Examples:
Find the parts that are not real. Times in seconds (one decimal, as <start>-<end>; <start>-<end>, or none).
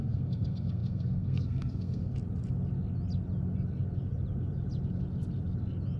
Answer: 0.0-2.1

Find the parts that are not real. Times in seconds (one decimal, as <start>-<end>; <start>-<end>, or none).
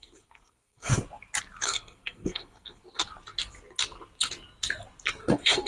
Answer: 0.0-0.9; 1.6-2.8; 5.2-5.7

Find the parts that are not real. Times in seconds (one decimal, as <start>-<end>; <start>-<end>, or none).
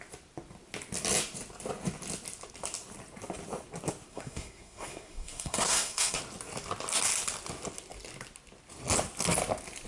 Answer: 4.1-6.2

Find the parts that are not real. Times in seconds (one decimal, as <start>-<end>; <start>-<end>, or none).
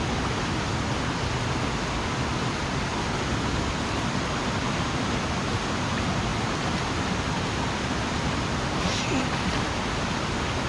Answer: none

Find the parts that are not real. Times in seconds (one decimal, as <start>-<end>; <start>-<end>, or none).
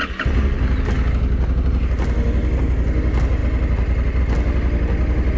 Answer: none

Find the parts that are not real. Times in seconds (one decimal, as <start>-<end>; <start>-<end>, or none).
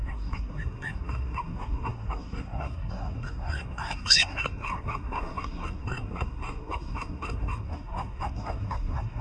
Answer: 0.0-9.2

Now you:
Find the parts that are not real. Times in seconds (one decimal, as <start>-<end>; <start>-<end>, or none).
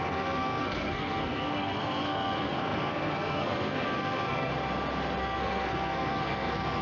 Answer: 0.0-4.5; 5.2-6.8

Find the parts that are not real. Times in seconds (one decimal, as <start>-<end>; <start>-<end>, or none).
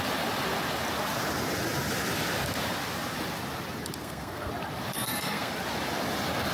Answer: 4.0-4.5; 4.9-5.5